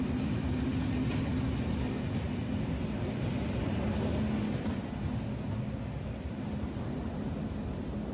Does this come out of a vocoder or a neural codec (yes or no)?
no